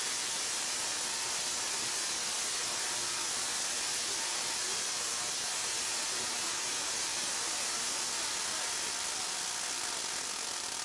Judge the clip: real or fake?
real